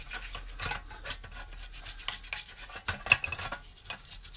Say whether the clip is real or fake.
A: real